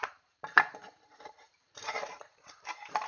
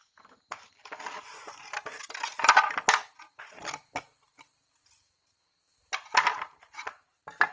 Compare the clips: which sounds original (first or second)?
second